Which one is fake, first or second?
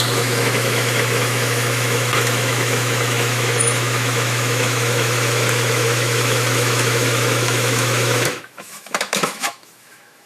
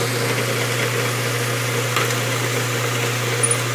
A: first